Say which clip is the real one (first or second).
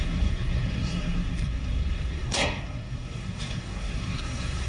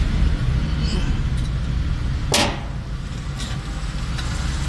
second